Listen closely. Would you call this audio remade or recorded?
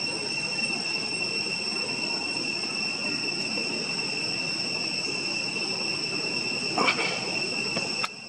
recorded